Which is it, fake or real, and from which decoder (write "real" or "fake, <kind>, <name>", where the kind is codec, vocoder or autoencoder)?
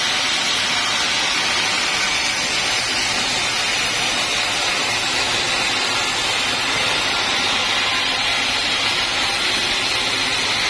real